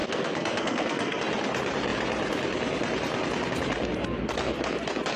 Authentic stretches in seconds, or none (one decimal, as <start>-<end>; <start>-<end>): 1.2-5.2

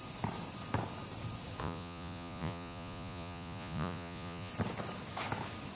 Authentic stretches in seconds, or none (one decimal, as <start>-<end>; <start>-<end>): 0.0-1.6; 4.5-5.8